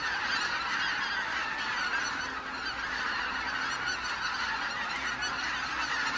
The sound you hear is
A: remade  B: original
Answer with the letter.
B